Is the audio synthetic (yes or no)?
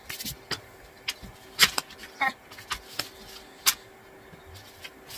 no